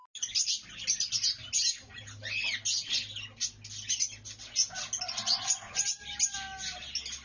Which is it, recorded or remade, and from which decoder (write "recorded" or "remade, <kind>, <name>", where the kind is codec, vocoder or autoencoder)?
recorded